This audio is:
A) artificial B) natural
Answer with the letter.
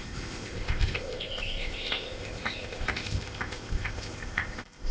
A